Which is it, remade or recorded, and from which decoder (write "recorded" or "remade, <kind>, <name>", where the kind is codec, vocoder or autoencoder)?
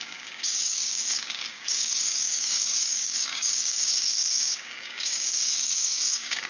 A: remade, codec, DAC